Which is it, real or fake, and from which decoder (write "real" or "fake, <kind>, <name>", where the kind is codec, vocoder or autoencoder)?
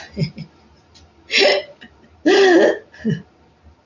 real